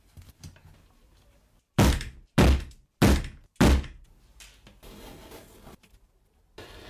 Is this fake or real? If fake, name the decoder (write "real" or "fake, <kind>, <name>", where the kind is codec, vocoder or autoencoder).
real